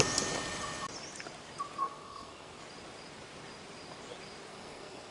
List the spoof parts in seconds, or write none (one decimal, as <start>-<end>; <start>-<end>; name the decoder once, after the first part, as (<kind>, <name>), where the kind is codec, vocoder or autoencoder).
1.8-2.6 (codec, SNAC); 4.5-5.1